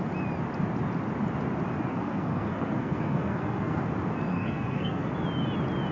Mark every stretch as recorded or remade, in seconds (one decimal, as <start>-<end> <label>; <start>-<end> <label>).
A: 0.0-1.9 recorded; 1.9-3.8 remade; 3.8-4.3 recorded; 4.3-5.1 remade; 5.1-5.9 recorded